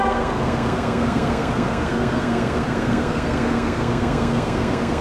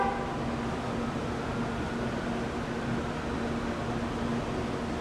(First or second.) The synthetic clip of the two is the first